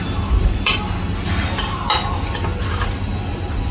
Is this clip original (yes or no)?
yes